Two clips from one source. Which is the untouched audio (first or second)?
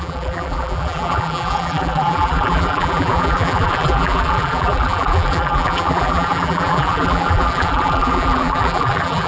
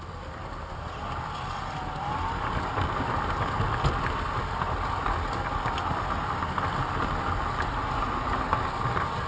second